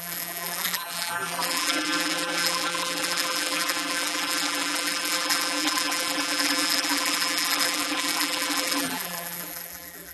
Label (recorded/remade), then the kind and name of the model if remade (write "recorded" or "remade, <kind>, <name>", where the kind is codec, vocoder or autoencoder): remade, vocoder, BigVGAN v2